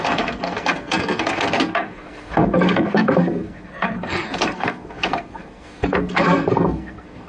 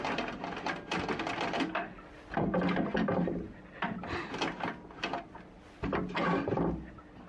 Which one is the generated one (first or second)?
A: first